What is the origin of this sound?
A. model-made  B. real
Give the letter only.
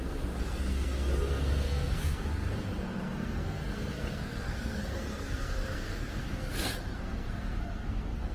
A